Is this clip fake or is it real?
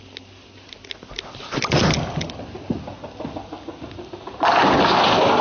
real